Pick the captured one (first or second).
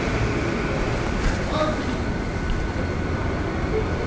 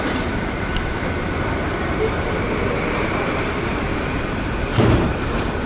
first